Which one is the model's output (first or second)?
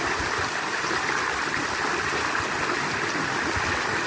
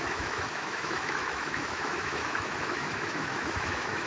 second